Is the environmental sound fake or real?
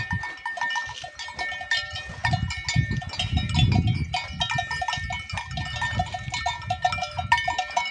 real